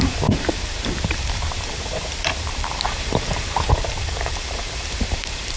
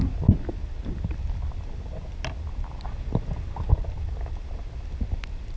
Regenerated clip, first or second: first